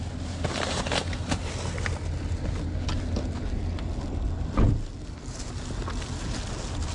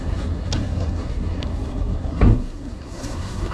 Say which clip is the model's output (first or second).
second